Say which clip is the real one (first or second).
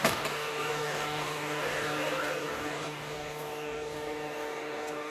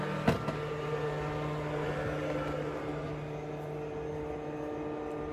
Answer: second